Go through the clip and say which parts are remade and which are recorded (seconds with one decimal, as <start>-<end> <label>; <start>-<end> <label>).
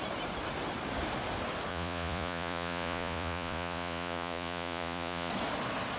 0.0-1.7 recorded; 1.7-5.3 remade; 5.3-6.0 recorded